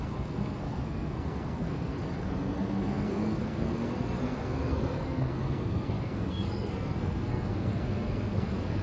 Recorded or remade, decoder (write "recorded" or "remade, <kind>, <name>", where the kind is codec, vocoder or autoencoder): remade, codec, SNAC